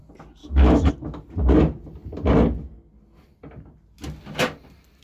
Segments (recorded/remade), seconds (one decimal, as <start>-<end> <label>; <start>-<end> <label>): 0.0-0.4 recorded; 0.4-0.9 remade; 0.9-5.0 recorded